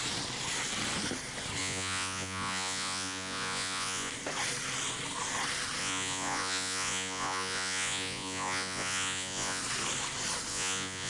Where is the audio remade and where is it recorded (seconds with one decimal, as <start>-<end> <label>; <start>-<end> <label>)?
0.0-1.6 recorded; 1.6-4.1 remade; 4.1-5.8 recorded; 5.8-9.6 remade; 9.6-10.5 recorded; 10.5-11.1 remade